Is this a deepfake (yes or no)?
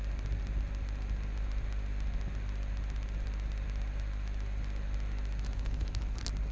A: no